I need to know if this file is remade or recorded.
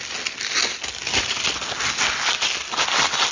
recorded